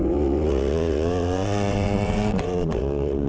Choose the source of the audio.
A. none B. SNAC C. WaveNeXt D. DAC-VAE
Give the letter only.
C